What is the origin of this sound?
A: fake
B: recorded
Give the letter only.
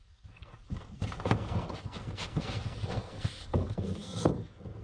A